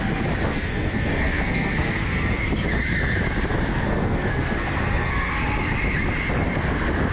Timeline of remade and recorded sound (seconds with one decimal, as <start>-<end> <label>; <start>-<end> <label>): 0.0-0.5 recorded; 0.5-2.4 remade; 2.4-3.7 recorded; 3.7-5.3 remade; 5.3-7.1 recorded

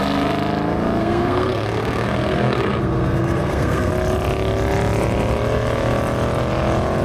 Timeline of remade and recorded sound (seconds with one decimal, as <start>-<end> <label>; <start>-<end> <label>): 0.0-1.0 recorded; 1.0-3.9 remade; 3.9-7.0 recorded

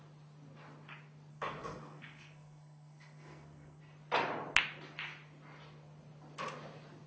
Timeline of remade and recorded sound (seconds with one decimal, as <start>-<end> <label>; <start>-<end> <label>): 0.0-1.3 recorded; 1.3-3.8 remade; 3.8-7.1 recorded

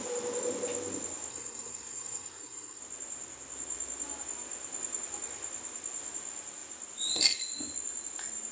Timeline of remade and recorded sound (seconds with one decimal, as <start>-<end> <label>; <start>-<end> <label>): 0.0-1.3 recorded; 1.3-2.8 remade; 2.8-8.5 recorded

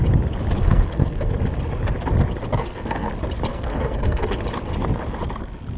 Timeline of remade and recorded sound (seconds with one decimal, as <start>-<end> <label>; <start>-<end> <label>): 0.0-0.6 recorded; 0.6-1.3 remade; 1.3-2.5 recorded; 2.5-3.1 remade; 3.1-3.5 recorded; 3.5-4.4 remade; 4.4-5.8 recorded